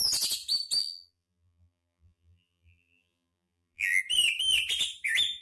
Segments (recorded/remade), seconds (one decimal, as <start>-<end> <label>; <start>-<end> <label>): 0.0-0.8 recorded; 0.8-4.0 remade; 4.0-5.4 recorded